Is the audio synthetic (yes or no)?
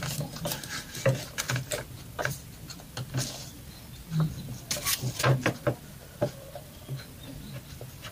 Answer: no